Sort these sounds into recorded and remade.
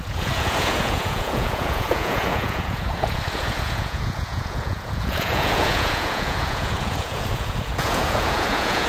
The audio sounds remade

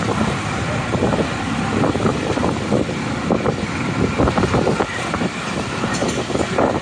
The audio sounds recorded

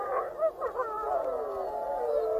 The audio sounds recorded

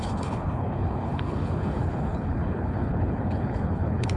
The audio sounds remade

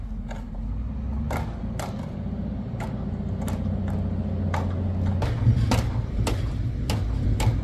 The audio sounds recorded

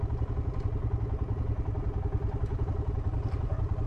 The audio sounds recorded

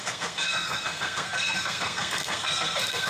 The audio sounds remade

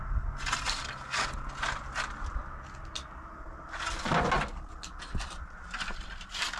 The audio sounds recorded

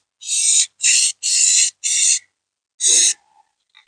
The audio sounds recorded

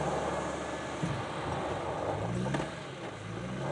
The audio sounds recorded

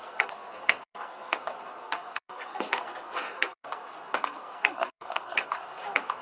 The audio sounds remade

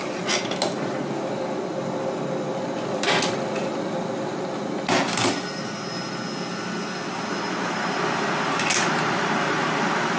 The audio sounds recorded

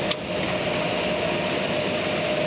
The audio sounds recorded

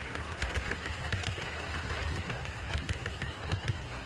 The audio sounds remade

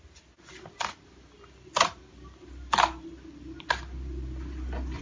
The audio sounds recorded